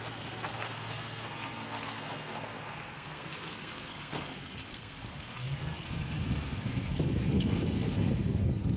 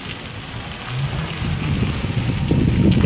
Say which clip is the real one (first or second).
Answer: second